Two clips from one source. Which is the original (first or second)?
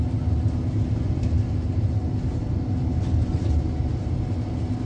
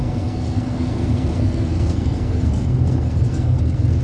first